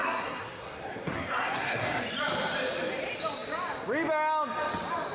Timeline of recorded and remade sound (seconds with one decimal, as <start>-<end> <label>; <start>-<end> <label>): 0.0-2.0 remade; 2.0-5.1 recorded